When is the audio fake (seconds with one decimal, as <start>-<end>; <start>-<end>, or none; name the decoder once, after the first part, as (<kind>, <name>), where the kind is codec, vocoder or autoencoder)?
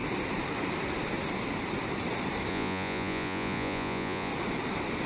2.5-4.3 (vocoder, Vocos)